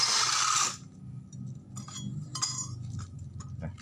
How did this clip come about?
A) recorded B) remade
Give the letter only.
A